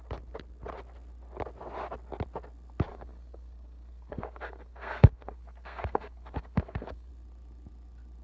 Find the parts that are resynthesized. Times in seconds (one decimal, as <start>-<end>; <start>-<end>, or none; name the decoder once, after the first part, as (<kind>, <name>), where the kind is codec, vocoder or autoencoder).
2.9-7.1 (codec, SNAC)